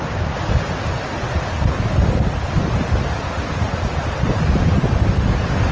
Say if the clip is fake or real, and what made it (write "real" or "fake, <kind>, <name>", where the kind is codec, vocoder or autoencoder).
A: real